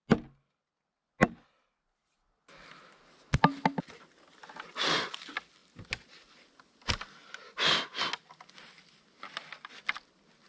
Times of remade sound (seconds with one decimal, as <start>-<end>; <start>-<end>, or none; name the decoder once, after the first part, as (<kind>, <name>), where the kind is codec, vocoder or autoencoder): none